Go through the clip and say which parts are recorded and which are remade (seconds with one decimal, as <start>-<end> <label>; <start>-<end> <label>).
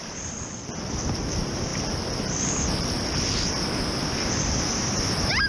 0.0-5.5 recorded